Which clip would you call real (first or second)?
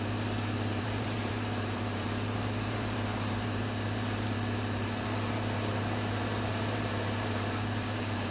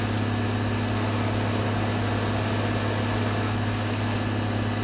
second